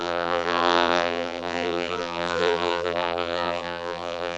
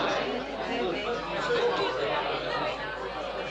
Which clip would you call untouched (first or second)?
second